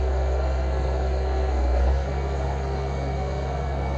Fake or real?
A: fake